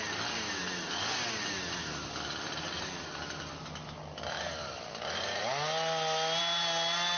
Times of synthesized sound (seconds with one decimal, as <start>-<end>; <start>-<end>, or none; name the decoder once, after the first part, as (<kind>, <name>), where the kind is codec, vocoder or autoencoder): none